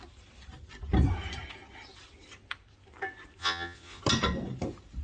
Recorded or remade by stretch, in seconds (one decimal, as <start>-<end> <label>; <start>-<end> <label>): 0.0-3.4 recorded; 3.4-4.0 remade; 4.0-5.0 recorded